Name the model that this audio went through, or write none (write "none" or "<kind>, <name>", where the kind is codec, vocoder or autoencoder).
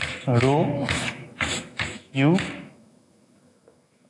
autoencoder, DAC-VAE